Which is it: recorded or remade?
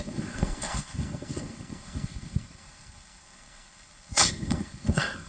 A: remade